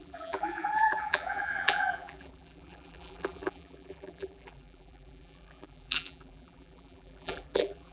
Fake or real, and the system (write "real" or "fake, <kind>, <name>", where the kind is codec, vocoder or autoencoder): fake, vocoder, BigVGAN v2